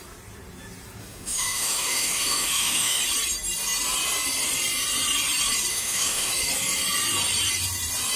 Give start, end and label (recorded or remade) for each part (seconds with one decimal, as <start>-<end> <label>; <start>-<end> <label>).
0.0-1.0 recorded; 1.0-3.0 remade; 3.0-5.7 recorded; 5.7-6.3 remade; 6.3-8.2 recorded